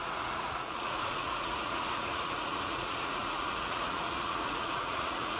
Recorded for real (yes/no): no